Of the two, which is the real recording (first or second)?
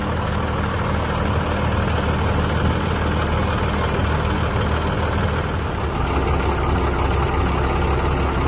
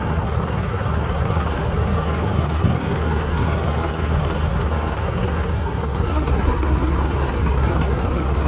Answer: first